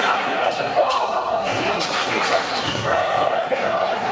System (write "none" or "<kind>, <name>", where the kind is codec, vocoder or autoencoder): codec, SNAC